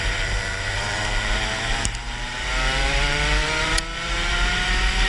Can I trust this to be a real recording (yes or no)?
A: no